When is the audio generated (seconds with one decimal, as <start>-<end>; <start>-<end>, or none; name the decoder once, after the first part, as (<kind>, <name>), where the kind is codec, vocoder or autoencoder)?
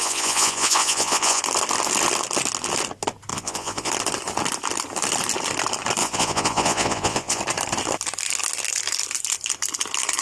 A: 0.0-1.4 (vocoder, Vocos); 3.3-3.9; 6.0-7.4